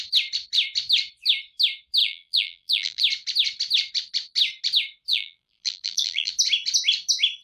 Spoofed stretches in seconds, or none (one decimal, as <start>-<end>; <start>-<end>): 2.0-3.0; 5.1-6.3